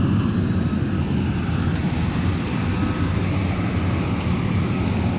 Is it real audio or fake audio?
real